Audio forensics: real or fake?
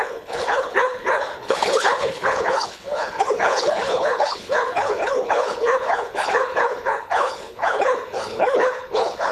fake